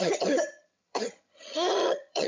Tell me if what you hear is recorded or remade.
remade